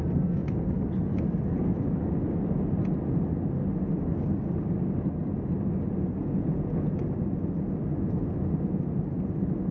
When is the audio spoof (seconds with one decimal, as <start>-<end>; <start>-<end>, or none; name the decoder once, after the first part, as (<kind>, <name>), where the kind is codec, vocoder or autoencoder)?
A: 6.2-7.0 (vocoder, Vocos)